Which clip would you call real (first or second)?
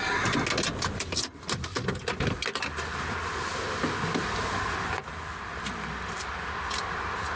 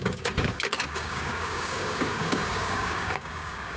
first